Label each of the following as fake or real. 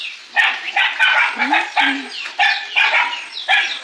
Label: real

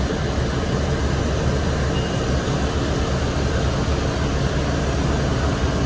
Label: real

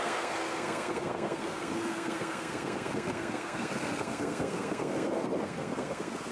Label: fake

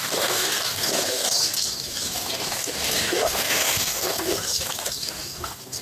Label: fake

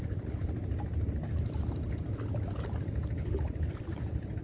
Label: real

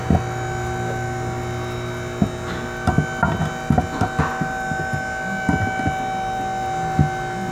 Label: real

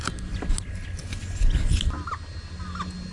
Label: real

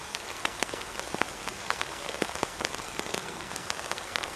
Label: fake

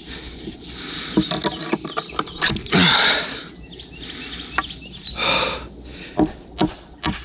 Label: real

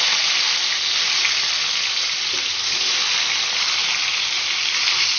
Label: real